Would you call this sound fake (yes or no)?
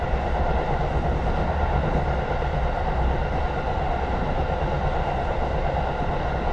no